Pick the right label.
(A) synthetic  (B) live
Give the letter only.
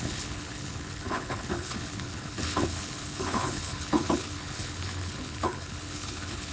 A